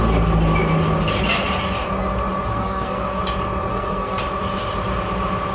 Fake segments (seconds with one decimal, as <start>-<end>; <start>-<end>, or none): 2.5-3.2; 3.7-4.2